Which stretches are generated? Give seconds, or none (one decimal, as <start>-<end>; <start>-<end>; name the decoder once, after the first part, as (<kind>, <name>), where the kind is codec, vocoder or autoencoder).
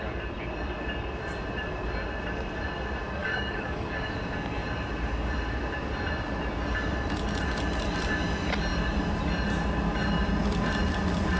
3.2-4.1 (codec, DAC)